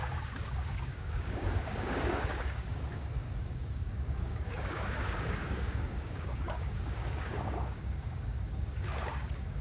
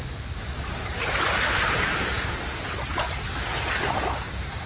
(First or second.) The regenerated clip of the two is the first